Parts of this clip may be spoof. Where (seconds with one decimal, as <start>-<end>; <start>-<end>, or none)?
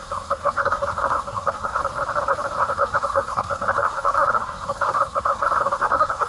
0.0-1.8; 2.6-6.3